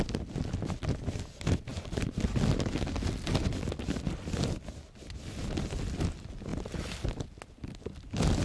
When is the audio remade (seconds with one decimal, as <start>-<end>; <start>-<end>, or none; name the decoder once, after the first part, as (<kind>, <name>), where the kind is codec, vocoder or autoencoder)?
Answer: none